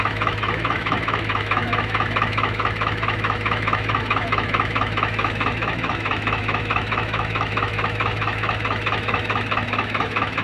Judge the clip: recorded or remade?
remade